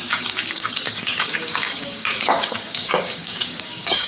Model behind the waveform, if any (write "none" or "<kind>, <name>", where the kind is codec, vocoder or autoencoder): codec, DAC